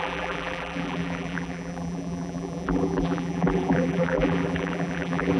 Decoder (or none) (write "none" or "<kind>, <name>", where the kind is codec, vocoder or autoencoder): vocoder, BigVGAN v2